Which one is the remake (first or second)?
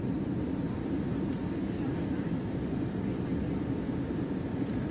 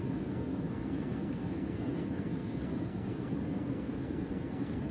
second